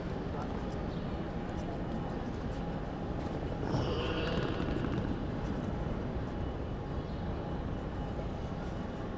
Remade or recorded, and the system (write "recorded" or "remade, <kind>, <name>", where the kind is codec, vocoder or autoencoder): recorded